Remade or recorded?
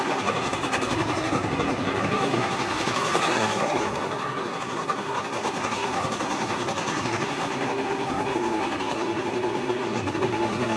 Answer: remade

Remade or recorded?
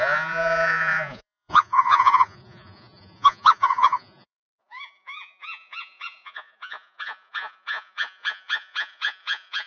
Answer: remade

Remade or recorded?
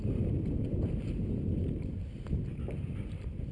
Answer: recorded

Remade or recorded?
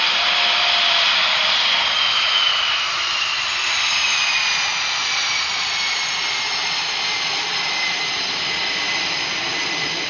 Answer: recorded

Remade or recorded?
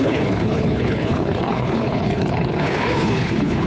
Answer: remade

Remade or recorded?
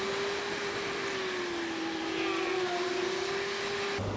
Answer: recorded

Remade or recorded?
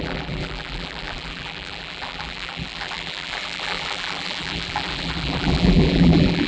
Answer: remade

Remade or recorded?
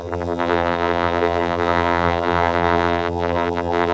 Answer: remade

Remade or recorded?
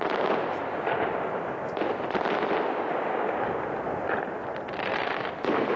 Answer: recorded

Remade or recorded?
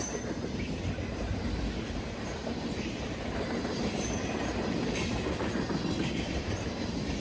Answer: remade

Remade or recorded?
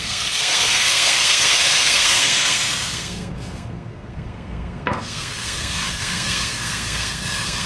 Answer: remade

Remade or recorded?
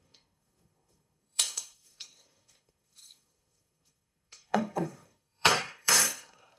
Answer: remade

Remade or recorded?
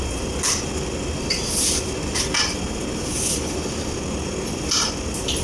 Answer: recorded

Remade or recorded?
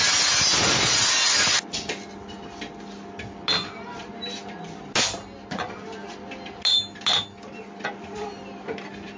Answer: recorded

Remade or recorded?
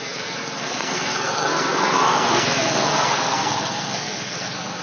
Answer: remade